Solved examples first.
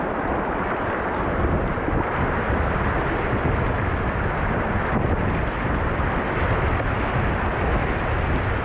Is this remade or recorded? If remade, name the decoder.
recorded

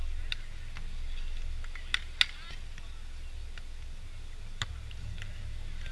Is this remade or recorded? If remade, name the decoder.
recorded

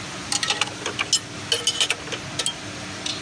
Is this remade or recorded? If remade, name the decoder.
recorded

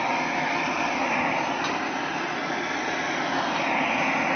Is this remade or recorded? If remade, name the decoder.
recorded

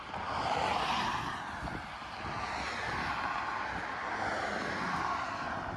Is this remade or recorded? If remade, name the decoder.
recorded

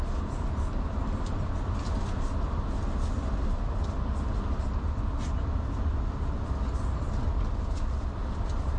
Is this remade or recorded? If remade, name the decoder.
recorded